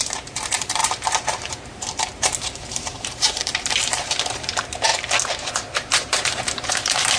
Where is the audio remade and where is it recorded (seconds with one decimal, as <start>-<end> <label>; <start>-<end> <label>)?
0.0-4.9 remade; 4.9-5.5 recorded; 5.5-7.2 remade